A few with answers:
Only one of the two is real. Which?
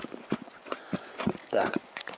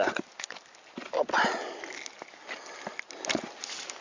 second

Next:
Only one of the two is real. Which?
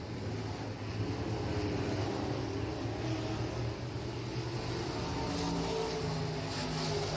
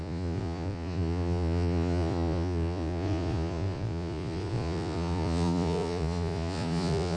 first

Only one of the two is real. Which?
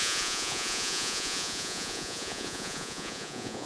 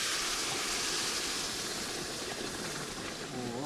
second